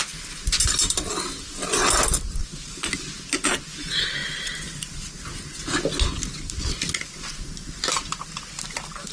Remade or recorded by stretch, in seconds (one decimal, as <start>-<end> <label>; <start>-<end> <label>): 0.0-9.1 recorded